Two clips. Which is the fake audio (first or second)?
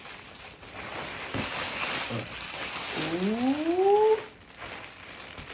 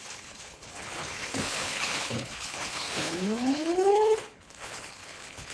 second